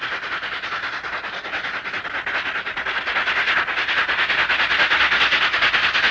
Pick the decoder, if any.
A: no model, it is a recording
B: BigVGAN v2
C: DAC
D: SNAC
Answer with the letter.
A